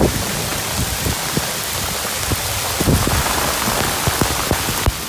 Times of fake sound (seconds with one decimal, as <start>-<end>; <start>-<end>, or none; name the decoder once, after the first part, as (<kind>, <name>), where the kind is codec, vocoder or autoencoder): none